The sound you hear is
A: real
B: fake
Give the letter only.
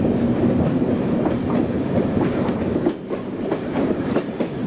B